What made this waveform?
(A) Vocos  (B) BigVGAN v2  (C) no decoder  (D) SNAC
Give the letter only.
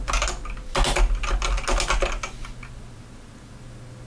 C